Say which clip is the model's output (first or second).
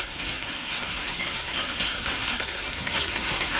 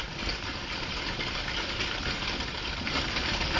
first